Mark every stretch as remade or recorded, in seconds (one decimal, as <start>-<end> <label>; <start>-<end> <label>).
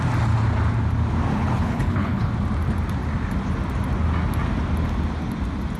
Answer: 0.0-1.3 recorded; 1.3-2.3 remade; 2.3-5.8 recorded